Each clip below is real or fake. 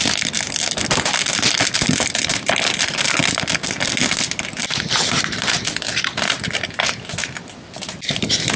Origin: real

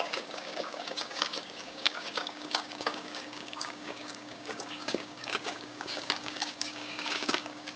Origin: fake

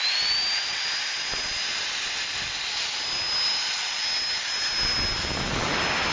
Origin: real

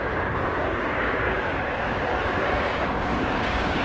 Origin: fake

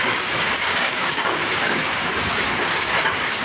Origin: fake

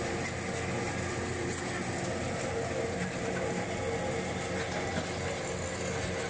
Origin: real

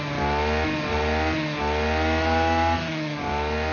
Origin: real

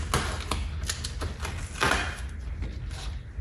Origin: real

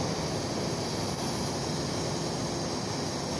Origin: real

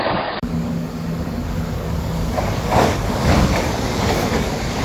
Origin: fake